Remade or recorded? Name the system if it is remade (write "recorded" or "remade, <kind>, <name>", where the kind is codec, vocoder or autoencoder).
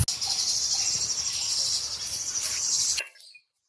recorded